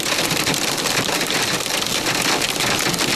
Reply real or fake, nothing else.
fake